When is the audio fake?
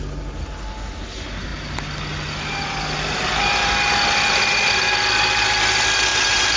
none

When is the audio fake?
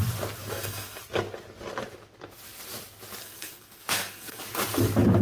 0.5-1.0 (codec, SNAC); 3.2-4.4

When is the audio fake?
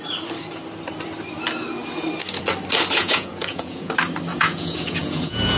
3.0-3.9 (vocoder, Vocos); 4.3-5.6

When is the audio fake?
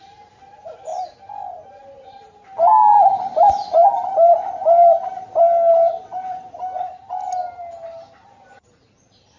none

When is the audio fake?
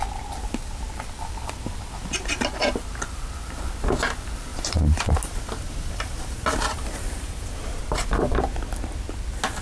4.5-8.4 (vocoder, BigVGAN v2)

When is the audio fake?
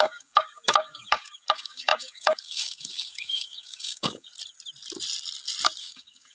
0.0-4.3 (codec, DAC); 5.8-6.3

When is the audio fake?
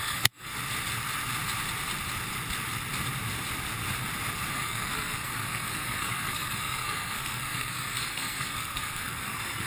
0.0-0.5 (codec, SNAC); 4.5-9.7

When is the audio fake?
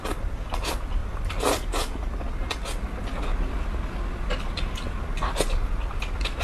none